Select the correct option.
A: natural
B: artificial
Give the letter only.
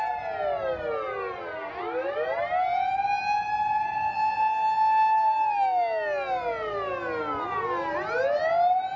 A